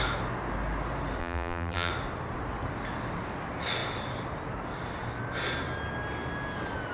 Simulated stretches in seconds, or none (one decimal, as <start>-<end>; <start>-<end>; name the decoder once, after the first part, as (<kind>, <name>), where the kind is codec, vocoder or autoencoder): 1.2-1.9 (vocoder, BigVGAN v2)